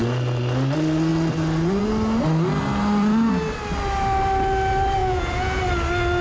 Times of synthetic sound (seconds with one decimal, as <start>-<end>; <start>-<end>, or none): 5.0-5.6